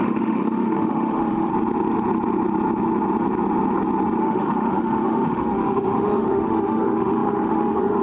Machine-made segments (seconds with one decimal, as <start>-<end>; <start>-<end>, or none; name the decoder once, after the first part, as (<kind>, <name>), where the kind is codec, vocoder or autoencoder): 0.0-1.5 (autoencoder, DAC-VAE); 4.2-8.0